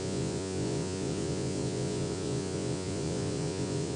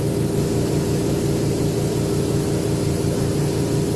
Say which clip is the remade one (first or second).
first